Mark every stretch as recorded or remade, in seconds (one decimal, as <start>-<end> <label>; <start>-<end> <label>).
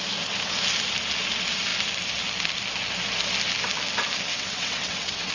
0.0-4.3 recorded; 4.3-5.3 remade